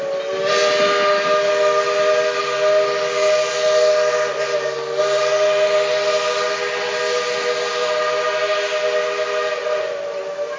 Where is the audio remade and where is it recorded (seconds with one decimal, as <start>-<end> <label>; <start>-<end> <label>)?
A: 0.0-10.6 recorded